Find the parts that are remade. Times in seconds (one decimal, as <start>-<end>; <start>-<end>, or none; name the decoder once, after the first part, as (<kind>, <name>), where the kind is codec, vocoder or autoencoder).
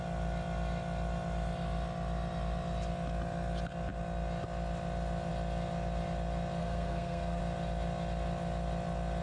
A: 6.6-7.4 (codec, SNAC)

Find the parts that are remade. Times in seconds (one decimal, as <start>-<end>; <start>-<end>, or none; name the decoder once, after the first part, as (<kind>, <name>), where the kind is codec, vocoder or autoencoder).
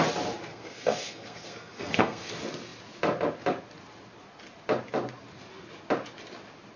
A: 0.5-2.3 (codec, SNAC)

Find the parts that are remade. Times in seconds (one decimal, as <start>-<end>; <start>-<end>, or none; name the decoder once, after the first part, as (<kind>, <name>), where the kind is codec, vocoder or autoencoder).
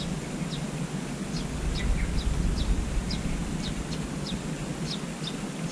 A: none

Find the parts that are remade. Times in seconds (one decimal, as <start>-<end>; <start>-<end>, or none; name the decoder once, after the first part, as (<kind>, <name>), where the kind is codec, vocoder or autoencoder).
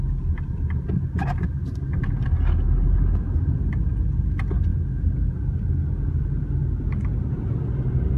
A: none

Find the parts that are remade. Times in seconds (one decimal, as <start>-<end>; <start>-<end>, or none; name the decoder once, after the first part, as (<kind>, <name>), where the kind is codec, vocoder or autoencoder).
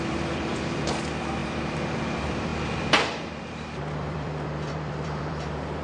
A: 0.0-5.8 (vocoder, BigVGAN v2)